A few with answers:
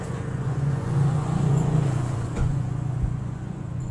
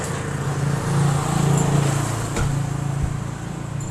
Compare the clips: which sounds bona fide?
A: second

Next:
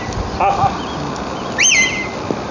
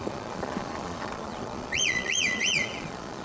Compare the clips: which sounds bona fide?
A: first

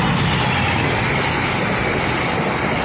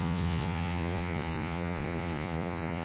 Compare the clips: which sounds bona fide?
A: first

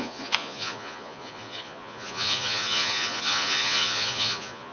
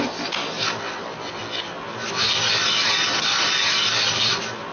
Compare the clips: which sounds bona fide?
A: second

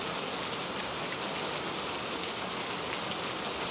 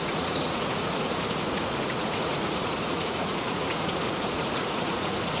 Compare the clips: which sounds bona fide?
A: first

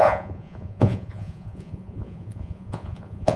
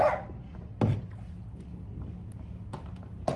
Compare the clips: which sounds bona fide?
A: second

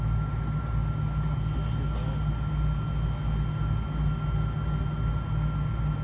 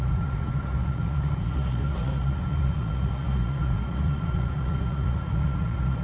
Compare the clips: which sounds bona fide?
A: first